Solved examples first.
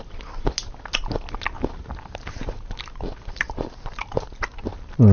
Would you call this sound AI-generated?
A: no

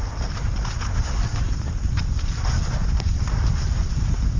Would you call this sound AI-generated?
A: no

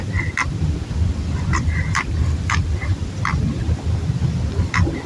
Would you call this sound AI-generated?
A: yes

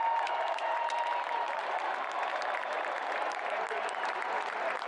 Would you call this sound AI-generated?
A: yes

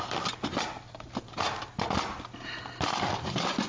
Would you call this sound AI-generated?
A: no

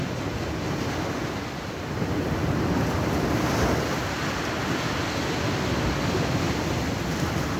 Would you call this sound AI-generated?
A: no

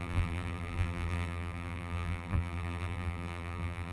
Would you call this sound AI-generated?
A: yes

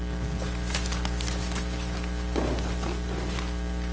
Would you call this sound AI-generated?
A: no